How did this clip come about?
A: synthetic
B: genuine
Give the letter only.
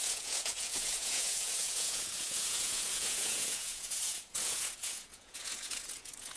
A